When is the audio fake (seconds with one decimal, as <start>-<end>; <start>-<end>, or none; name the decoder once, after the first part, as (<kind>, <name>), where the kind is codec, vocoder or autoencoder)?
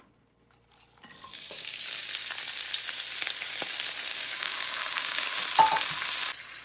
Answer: 1.3-2.1 (codec, DAC); 4.1-5.4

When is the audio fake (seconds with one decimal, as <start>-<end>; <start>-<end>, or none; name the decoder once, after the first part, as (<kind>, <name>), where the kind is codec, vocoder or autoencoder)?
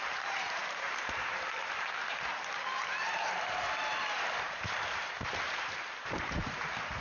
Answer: 0.0-7.0 (vocoder, BigVGAN v2)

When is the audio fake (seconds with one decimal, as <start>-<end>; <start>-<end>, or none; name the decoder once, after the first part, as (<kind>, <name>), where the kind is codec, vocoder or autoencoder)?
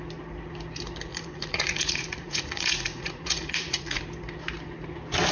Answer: 1.1-4.0 (vocoder, Vocos)